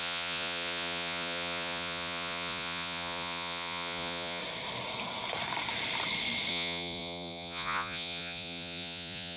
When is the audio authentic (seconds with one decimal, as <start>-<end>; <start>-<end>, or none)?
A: 4.4-6.5